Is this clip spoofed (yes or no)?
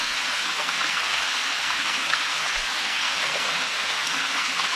yes